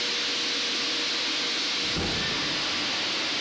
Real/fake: real